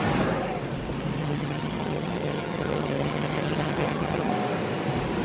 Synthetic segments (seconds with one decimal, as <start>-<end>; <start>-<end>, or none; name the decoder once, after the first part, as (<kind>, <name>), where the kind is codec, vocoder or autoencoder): 1.2-4.3 (vocoder, HiFi-GAN)